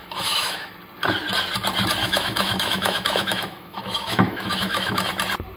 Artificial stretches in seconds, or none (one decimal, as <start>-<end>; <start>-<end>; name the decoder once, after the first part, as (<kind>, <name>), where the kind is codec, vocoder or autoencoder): 0.0-0.7 (autoencoder, DAC-VAE); 2.0-5.1